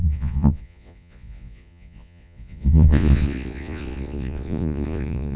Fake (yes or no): yes